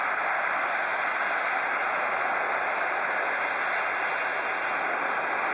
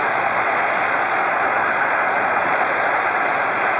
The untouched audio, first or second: first